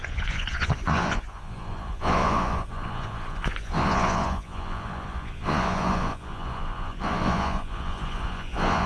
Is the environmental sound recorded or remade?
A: remade